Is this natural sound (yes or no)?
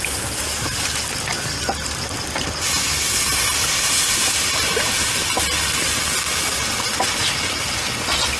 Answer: yes